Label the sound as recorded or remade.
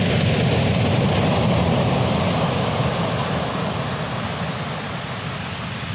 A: recorded